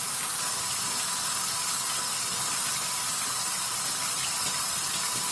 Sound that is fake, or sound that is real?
real